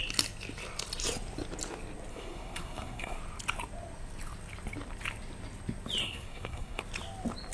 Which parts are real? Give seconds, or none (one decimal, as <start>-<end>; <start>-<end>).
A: 0.0-2.1; 3.2-6.0; 6.8-7.5